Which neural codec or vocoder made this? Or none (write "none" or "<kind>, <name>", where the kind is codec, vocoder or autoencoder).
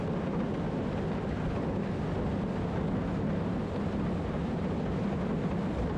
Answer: none